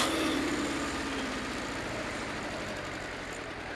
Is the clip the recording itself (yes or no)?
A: yes